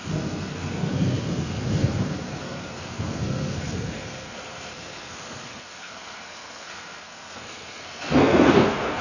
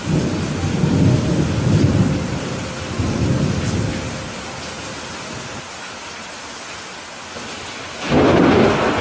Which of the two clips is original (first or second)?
second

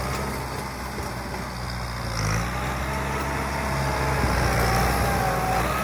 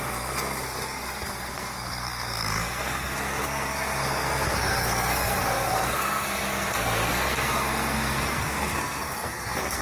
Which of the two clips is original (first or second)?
first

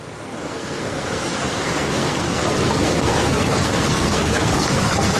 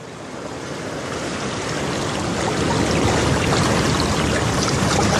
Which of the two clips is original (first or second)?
second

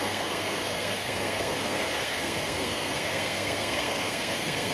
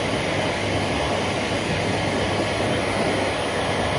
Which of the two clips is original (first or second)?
second